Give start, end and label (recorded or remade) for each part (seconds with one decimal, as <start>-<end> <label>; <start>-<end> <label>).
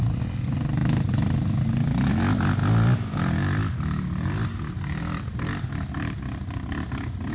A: 0.0-7.3 recorded